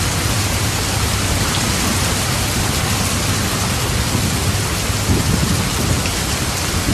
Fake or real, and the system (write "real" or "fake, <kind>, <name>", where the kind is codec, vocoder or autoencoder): real